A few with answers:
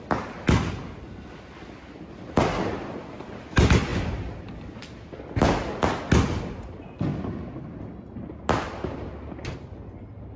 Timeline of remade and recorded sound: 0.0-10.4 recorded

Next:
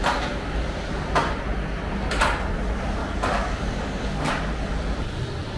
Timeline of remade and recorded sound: 0.0-3.0 recorded; 3.0-4.3 remade; 4.3-5.6 recorded